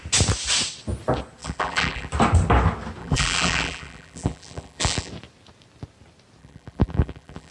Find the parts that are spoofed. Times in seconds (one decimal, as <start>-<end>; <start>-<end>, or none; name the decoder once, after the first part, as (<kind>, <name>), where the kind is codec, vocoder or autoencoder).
1.4-2.1 (vocoder, BigVGAN v2); 3.0-5.1; 6.4-7.5